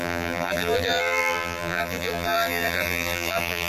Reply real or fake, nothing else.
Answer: fake